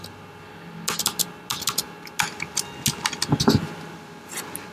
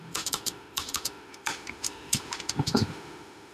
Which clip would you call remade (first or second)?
second